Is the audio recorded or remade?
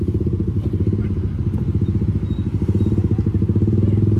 recorded